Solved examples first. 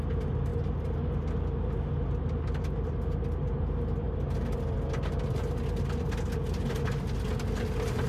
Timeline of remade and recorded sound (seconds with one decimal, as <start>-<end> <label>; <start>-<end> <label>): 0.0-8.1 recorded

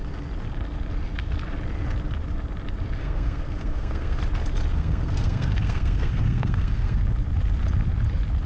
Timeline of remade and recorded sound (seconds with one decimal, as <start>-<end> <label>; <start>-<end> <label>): 0.0-3.0 recorded; 3.0-4.2 remade; 4.2-4.7 recorded; 4.7-7.0 remade; 7.0-8.5 recorded

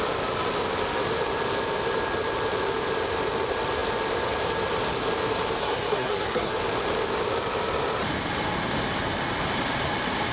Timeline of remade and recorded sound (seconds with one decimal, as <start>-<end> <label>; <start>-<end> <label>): 0.0-5.6 recorded; 5.6-6.5 remade; 6.5-10.3 recorded